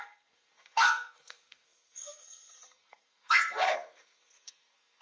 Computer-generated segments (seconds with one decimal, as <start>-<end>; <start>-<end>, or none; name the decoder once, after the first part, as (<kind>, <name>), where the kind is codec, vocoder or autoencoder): 0.0-5.0 (codec, SNAC)

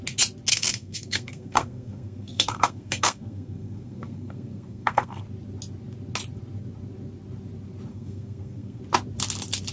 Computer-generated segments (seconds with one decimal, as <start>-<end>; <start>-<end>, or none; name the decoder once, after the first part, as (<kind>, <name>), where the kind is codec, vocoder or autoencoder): 0.5-5.2 (codec, SNAC); 7.9-8.8

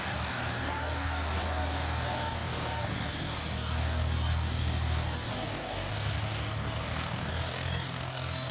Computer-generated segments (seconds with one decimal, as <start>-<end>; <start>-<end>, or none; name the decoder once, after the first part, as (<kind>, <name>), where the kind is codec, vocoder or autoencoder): 0.0-8.5 (codec, DAC)

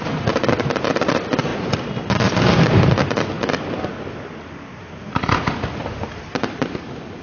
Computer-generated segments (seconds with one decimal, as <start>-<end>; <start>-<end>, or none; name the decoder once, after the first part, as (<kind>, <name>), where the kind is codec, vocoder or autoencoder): none

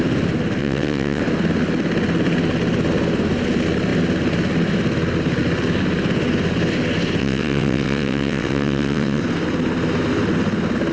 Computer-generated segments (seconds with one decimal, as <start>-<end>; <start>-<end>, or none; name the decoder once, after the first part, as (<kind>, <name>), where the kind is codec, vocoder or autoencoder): 0.6-1.2 (vocoder, WaveNeXt); 7.2-9.2

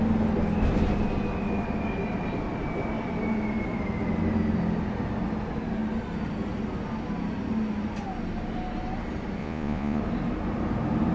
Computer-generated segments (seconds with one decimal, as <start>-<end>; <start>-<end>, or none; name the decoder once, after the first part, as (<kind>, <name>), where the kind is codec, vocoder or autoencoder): 9.4-10.0 (vocoder, Vocos)

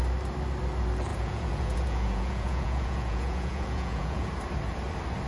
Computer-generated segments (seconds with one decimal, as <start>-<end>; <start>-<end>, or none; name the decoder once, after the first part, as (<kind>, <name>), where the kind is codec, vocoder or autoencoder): 1.1-4.3 (vocoder, Vocos)

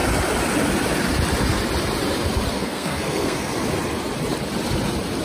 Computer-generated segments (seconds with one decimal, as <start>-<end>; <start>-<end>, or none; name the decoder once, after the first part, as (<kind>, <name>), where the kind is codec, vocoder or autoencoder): 2.5-3.5 (codec, SNAC)